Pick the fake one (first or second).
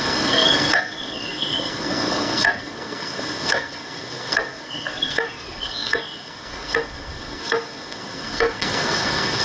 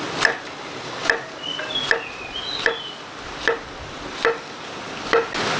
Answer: first